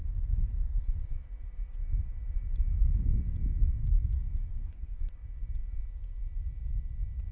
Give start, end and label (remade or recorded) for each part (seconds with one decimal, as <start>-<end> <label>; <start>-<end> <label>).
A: 0.0-3.8 recorded; 3.8-5.1 remade; 5.1-7.3 recorded

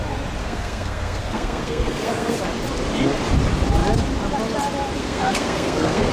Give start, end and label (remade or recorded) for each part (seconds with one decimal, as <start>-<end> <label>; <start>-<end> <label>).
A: 0.0-0.4 recorded; 0.4-2.4 remade; 2.4-5.0 recorded; 5.0-6.1 remade

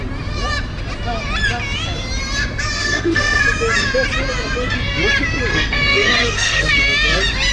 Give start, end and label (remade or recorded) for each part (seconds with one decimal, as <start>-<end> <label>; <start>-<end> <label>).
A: 0.0-2.8 recorded; 2.8-3.4 remade; 3.4-5.5 recorded; 5.5-6.8 remade; 6.8-7.5 recorded